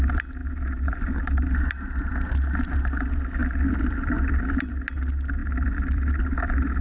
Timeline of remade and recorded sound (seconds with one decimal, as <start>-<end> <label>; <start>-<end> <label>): 0.0-3.4 recorded; 3.4-4.8 remade; 4.8-5.4 recorded; 5.4-6.1 remade; 6.1-6.8 recorded